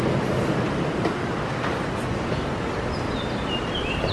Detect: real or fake real